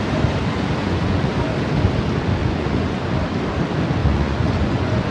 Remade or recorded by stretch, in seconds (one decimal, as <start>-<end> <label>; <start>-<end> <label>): 0.0-0.8 recorded; 0.8-1.3 remade; 1.3-2.4 recorded; 2.4-3.0 remade; 3.0-4.0 recorded; 4.0-5.1 remade